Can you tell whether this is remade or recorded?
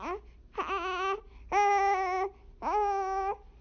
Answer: recorded